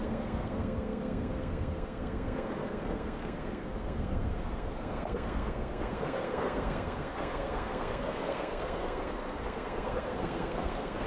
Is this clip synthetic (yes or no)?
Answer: yes